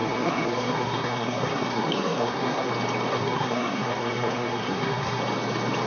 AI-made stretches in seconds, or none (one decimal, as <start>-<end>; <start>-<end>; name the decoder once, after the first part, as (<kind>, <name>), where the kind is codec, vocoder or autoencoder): 0.0-2.7 (codec, SNAC); 3.1-5.2